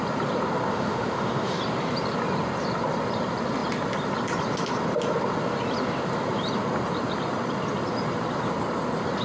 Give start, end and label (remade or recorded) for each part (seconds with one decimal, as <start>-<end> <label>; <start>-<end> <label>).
0.0-0.7 recorded; 0.7-1.6 remade; 1.6-9.2 recorded